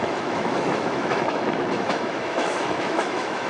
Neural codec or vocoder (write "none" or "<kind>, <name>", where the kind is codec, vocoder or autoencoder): autoencoder, DAC-VAE